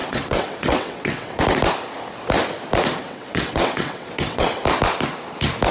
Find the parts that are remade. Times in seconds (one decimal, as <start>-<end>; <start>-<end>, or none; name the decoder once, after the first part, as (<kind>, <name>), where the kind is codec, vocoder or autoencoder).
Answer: 0.0-1.4 (vocoder, WaveNeXt); 3.0-4.6